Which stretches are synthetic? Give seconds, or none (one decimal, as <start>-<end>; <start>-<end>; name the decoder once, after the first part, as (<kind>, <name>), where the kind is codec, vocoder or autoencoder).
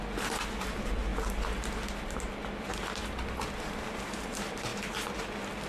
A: 0.0-1.1 (vocoder, BigVGAN v2); 3.8-4.7